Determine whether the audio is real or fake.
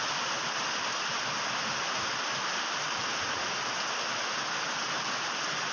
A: real